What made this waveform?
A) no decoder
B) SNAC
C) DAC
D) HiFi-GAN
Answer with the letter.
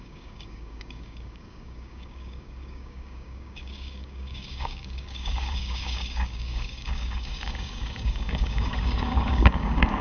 C